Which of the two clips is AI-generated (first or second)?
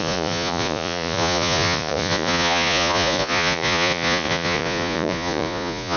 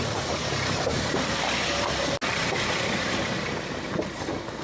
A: first